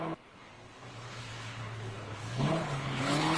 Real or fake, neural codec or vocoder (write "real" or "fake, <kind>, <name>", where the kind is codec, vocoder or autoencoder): fake, codec, HILCodec